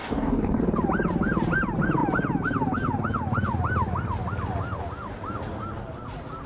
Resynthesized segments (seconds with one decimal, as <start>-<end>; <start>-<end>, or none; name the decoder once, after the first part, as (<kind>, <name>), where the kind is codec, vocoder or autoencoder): 0.0-0.6 (codec, DAC)